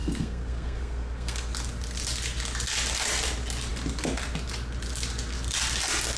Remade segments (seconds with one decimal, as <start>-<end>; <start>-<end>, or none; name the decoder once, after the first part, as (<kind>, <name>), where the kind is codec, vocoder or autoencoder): 0.0-1.5 (codec, SNAC)

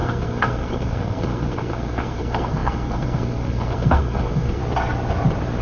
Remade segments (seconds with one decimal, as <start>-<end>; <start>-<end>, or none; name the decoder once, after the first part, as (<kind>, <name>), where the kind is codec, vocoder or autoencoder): 0.0-4.6 (codec, SNAC)

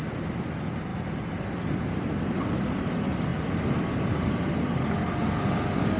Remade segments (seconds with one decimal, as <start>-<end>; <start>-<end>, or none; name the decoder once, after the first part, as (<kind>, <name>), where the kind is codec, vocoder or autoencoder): none

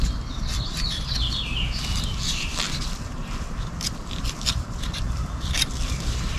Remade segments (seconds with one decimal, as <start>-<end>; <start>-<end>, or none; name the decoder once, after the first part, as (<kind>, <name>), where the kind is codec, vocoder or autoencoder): 0.0-2.5 (vocoder, BigVGAN v2); 4.5-6.4

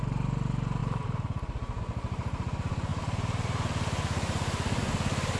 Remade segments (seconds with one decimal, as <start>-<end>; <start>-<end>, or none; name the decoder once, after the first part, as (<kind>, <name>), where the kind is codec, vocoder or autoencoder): 0.8-1.8 (vocoder, BigVGAN v2); 2.9-4.8